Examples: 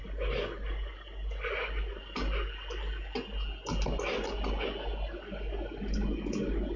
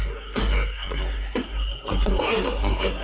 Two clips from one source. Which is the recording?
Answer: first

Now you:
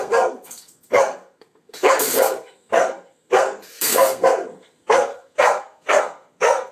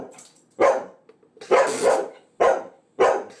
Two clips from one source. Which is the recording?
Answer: second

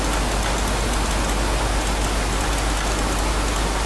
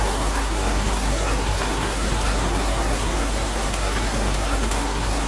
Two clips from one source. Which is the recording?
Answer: first